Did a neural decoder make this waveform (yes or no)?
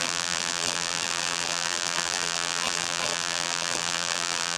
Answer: yes